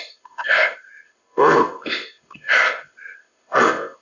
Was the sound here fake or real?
fake